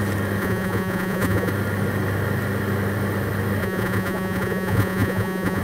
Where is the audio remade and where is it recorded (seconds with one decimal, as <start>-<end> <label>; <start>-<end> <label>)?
0.0-0.4 recorded; 0.4-1.5 remade; 1.5-3.6 recorded; 3.6-5.6 remade